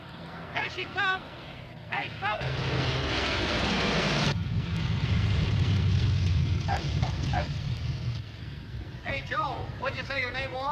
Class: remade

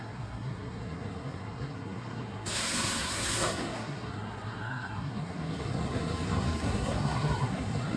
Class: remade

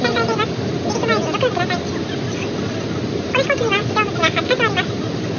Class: recorded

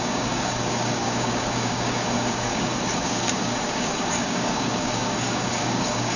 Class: remade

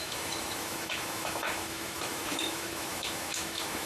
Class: remade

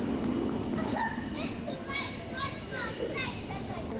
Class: recorded